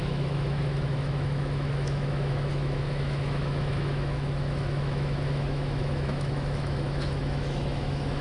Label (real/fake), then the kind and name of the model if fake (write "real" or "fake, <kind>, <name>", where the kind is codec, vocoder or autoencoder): fake, autoencoder, DAC-VAE